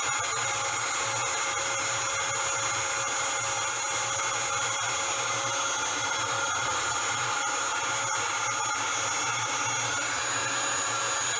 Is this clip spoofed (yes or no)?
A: no